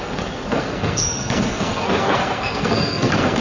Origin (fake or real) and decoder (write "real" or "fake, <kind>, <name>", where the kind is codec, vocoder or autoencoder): fake, codec, SNAC